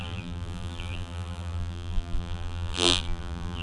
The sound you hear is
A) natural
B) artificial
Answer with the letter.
B